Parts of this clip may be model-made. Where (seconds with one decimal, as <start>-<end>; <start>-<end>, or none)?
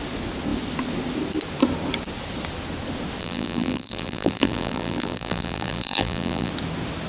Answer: 3.2-6.5